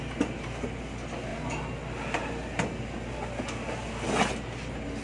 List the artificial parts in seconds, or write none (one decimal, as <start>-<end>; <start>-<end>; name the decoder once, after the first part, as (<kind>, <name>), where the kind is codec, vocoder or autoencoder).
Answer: none